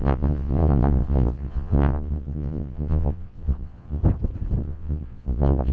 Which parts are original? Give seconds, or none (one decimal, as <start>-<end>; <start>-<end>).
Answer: 4.0-4.6